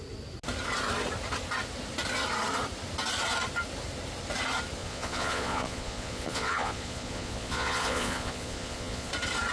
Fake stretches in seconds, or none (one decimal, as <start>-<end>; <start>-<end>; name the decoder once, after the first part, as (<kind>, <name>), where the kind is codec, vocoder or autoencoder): 4.8-9.1 (vocoder, Vocos)